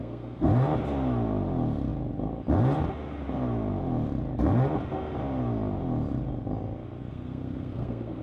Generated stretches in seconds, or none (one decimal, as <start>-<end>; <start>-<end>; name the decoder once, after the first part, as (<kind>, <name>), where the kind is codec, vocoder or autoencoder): 0.0-0.5 (codec, SNAC); 7.1-8.2